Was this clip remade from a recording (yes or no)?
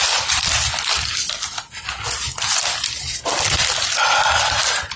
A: no